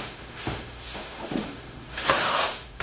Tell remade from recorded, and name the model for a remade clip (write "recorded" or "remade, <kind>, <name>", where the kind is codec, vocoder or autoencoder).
remade, autoencoder, DAC-VAE